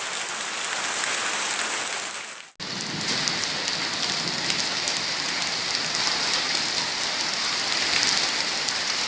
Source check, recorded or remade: recorded